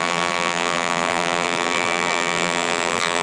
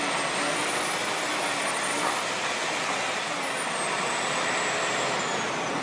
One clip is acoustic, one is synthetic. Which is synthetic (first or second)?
first